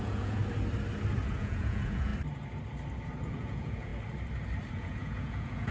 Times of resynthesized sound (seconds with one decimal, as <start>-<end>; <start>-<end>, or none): 0.0-0.4; 1.3-2.1; 3.2-3.9; 4.7-5.7